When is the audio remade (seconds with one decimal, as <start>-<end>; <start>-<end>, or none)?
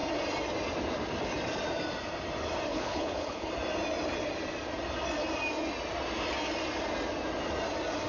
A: 2.7-3.5